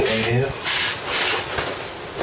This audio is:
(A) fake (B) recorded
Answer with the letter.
B